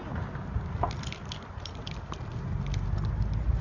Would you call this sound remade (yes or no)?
no